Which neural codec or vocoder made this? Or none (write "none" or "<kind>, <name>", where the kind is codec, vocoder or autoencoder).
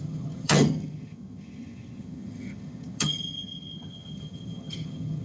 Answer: vocoder, HiFi-GAN